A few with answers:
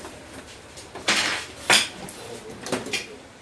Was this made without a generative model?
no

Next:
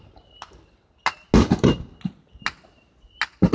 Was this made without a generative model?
yes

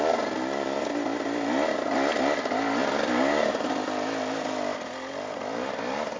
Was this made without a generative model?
yes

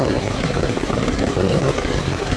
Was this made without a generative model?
no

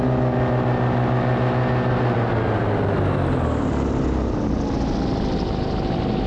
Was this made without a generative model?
yes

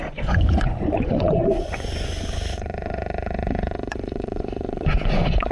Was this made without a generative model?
no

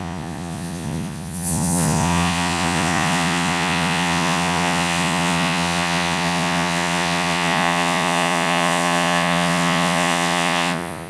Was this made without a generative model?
no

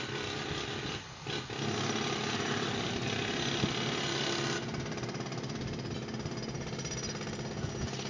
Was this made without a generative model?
yes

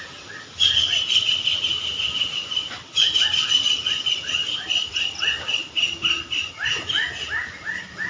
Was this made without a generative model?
yes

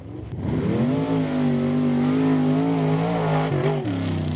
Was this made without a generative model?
yes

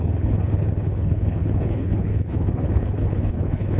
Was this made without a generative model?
no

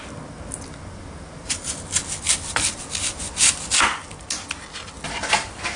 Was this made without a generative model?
yes